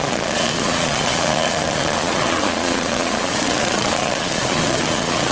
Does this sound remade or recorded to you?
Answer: remade